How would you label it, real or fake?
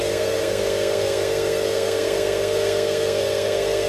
fake